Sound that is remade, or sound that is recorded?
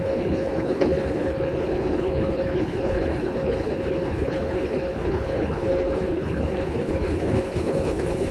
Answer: remade